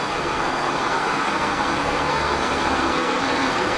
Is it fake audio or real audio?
fake